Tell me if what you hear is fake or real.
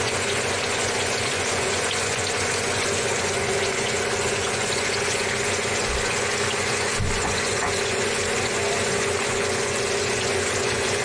fake